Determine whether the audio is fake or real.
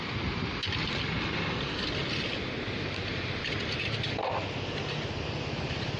real